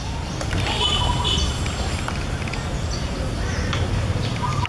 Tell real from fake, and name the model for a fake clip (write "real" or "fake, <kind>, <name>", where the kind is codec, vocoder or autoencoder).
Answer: real